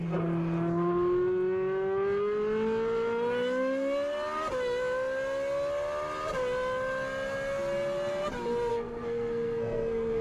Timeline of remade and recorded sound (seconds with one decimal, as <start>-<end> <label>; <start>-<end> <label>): 0.0-8.7 recorded; 8.7-10.2 remade